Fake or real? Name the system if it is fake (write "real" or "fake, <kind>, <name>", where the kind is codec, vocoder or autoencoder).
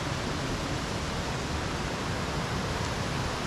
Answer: real